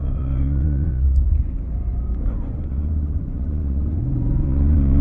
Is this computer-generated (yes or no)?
yes